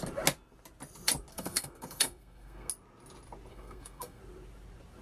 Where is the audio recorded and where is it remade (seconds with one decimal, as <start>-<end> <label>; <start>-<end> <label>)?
0.0-1.3 recorded; 1.3-2.7 remade; 2.7-3.5 recorded; 3.5-4.2 remade; 4.2-5.0 recorded